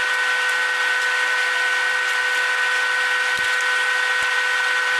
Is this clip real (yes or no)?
yes